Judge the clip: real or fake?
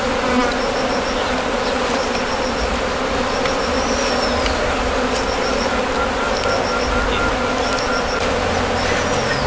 real